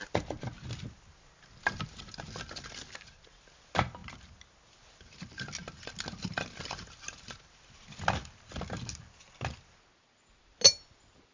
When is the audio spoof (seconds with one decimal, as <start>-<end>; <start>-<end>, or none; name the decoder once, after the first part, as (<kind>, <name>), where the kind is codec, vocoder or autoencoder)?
none